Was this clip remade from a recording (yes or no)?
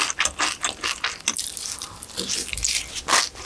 no